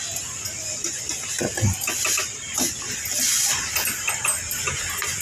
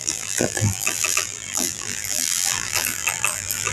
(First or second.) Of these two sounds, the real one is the first